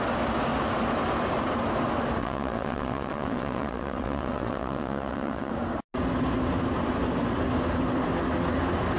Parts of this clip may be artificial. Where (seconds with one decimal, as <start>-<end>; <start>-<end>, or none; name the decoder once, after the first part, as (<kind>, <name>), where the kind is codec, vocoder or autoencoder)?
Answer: 2.2-5.5 (vocoder, WaveNeXt)